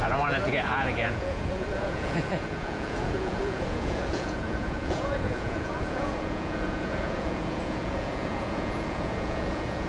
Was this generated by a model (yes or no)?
yes